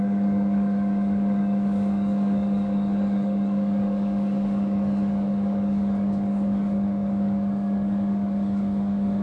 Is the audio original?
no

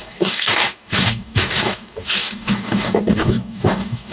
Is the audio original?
no